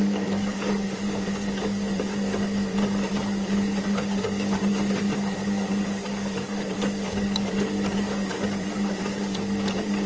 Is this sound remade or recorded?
remade